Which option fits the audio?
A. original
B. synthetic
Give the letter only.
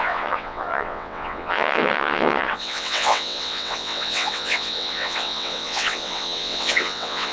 B